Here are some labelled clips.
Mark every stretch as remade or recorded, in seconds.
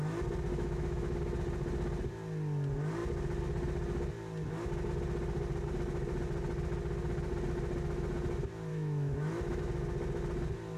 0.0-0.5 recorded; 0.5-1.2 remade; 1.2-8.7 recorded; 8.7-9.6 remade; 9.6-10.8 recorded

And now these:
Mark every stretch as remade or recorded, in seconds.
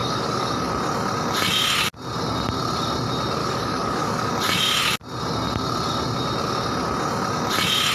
0.0-0.7 remade; 0.7-3.4 recorded; 3.4-4.3 remade; 4.3-7.9 recorded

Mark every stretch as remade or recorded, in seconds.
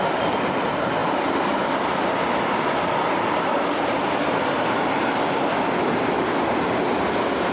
0.0-7.5 recorded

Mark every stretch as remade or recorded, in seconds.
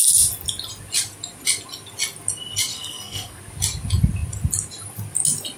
0.0-2.7 recorded; 2.7-3.4 remade; 3.4-5.6 recorded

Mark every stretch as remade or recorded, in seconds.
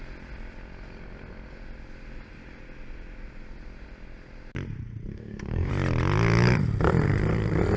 0.0-5.1 recorded; 5.1-5.7 remade; 5.7-7.8 recorded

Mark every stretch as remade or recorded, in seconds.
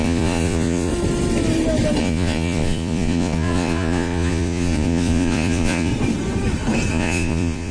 0.0-0.9 remade; 0.9-2.0 recorded; 2.0-5.9 remade; 5.9-6.9 recorded; 6.9-7.7 remade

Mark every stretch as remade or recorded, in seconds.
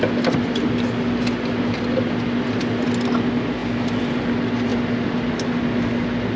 0.0-6.4 recorded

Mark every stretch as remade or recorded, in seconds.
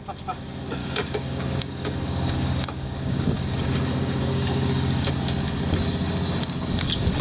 0.0-0.8 recorded; 0.8-5.1 remade; 5.1-7.2 recorded